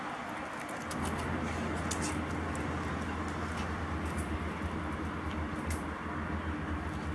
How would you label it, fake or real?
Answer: real